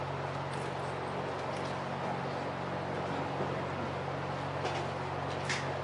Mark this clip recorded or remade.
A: recorded